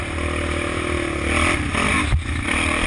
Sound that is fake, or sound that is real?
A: real